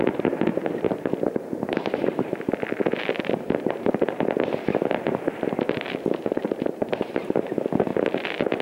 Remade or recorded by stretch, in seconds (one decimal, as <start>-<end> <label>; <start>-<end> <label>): 0.0-8.6 remade